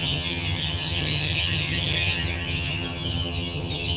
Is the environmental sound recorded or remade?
remade